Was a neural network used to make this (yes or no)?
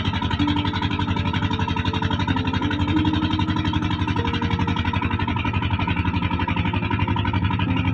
no